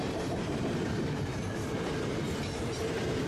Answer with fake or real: fake